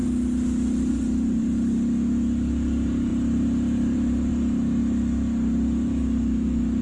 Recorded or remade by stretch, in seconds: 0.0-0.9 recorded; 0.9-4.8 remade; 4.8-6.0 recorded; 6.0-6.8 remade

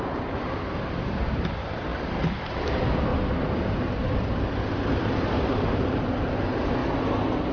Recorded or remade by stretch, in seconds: 0.0-3.1 remade; 3.1-4.9 recorded; 4.9-6.8 remade; 6.8-7.5 recorded

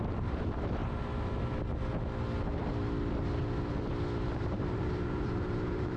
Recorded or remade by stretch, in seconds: 0.0-0.8 remade; 0.8-4.4 recorded; 4.4-6.0 remade

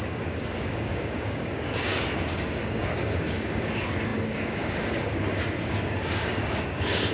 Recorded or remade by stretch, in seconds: 0.0-7.1 remade